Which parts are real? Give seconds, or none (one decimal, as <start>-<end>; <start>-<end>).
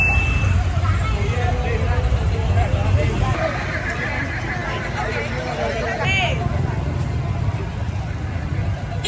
0.0-9.1